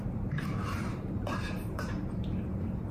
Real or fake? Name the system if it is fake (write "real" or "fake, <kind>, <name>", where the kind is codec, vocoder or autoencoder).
fake, vocoder, BigVGAN v2